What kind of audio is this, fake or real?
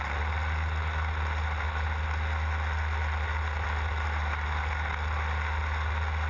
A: real